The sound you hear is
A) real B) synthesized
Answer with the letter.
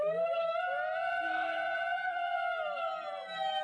A